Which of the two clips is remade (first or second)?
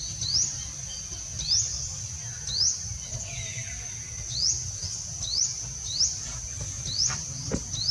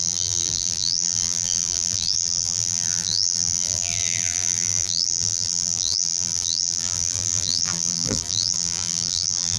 second